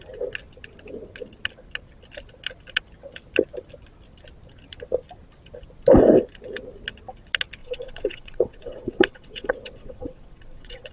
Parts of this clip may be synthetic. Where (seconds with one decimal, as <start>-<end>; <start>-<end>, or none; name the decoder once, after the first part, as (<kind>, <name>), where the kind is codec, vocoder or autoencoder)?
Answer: 7.6-10.9 (vocoder, WaveNeXt)